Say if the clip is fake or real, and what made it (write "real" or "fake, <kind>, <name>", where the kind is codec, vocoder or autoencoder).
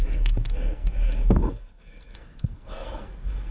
fake, codec, SNAC